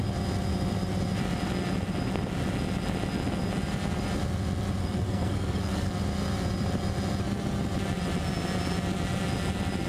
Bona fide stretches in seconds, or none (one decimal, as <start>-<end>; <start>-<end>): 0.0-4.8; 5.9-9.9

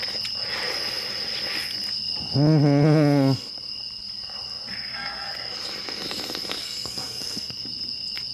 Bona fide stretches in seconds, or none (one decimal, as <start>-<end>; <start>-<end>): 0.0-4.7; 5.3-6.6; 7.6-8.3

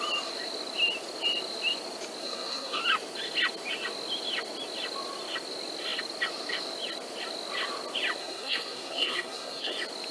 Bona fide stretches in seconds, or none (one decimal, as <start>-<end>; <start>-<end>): 0.0-2.2; 2.8-8.2; 9.7-10.1

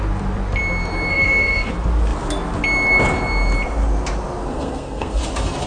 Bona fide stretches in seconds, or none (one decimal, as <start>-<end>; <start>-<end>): 0.0-1.1; 1.7-4.5; 5.2-5.7